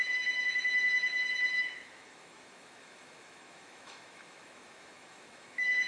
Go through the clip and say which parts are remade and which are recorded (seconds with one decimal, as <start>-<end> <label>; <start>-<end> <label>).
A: 0.0-5.9 remade